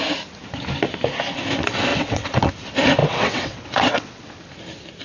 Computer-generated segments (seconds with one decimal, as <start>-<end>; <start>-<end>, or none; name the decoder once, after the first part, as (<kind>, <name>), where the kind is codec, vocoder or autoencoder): 1.9-2.5 (vocoder, WaveNeXt); 3.0-4.4